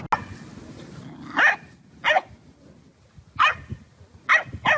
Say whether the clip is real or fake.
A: real